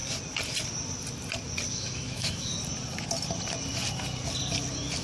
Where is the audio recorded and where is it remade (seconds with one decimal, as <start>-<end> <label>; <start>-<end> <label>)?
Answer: 0.0-1.7 recorded; 1.7-2.5 remade; 2.5-5.0 recorded